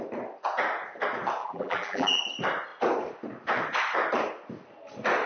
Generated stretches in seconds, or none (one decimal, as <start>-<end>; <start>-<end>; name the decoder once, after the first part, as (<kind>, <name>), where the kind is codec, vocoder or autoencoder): 1.4-2.2 (vocoder, BigVGAN v2)